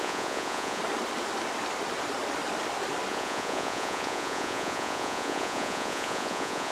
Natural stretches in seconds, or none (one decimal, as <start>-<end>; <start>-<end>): 0.8-3.1

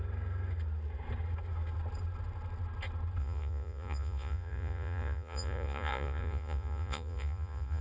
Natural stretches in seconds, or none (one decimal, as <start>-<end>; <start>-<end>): 0.0-3.2

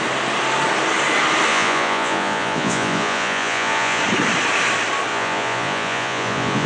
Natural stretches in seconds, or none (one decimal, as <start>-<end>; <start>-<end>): 0.0-1.5; 4.0-5.1